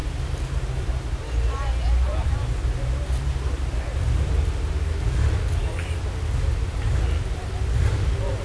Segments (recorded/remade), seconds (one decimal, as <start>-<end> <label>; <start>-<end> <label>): 0.0-3.5 remade; 3.5-8.4 recorded